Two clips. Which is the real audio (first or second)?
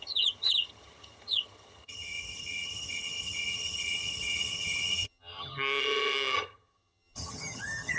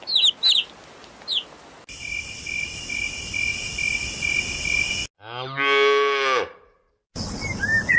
second